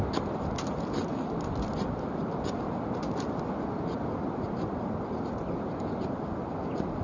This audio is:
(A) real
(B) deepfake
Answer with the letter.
A